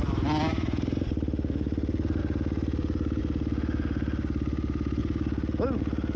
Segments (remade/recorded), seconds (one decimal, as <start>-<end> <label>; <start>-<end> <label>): 0.0-0.5 recorded; 0.5-1.1 remade; 1.1-6.2 recorded

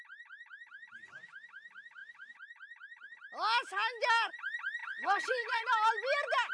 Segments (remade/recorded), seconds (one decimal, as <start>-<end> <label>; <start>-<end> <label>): 0.0-4.8 recorded; 4.8-5.6 remade; 5.6-6.5 recorded